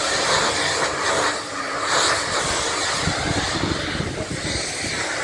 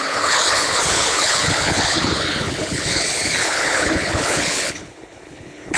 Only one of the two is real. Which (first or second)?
first